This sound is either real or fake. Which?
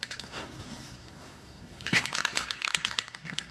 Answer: fake